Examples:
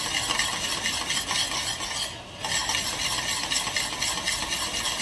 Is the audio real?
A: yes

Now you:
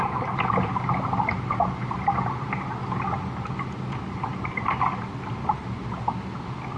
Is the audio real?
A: yes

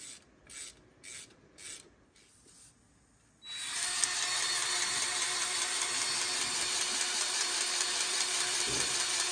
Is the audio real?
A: yes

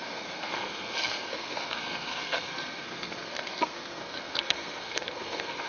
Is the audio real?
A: no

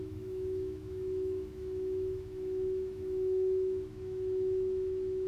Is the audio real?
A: no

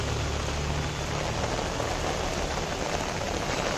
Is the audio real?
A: yes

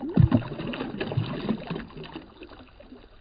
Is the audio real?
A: yes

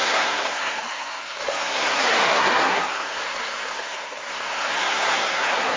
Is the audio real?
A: no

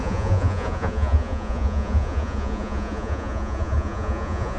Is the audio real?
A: no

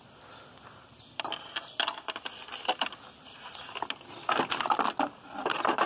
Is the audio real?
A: yes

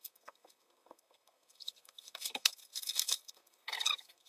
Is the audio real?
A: no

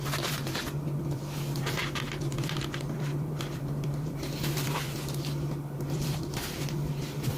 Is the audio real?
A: no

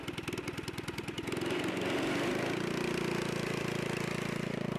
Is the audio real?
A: yes